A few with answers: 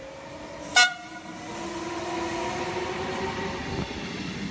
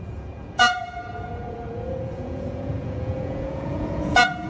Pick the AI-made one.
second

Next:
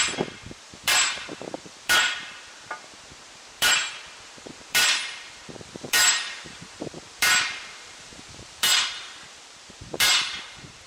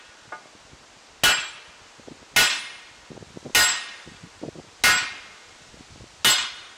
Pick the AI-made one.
first